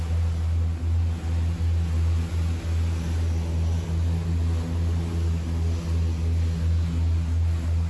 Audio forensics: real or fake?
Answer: real